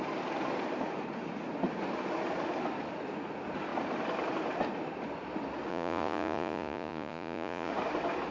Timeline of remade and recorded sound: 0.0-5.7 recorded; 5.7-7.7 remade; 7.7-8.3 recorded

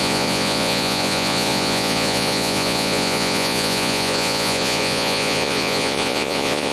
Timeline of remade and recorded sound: 0.0-6.7 remade

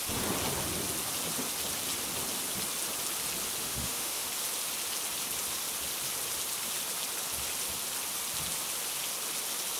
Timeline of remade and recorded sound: 0.0-3.6 recorded; 3.6-4.3 remade; 4.3-9.8 recorded

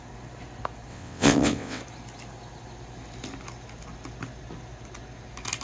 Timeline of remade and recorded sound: 0.0-0.9 recorded; 0.9-1.8 remade; 1.8-5.6 recorded

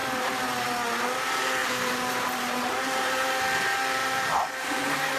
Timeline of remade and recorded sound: 0.0-1.6 recorded; 1.6-3.4 remade; 3.4-4.0 recorded; 4.0-5.2 remade

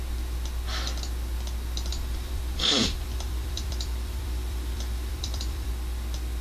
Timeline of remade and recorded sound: 0.0-1.9 recorded; 1.9-5.7 remade; 5.7-6.4 recorded

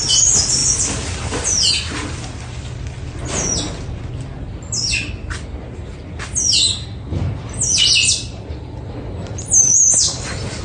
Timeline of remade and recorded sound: 0.0-10.6 recorded

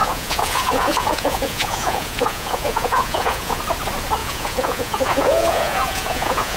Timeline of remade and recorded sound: 0.0-3.6 remade; 3.6-4.2 recorded; 4.2-6.6 remade